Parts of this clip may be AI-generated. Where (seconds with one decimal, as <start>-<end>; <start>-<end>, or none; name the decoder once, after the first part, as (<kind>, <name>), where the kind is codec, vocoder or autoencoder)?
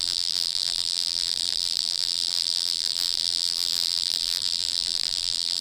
0.0-5.6 (vocoder, BigVGAN v2)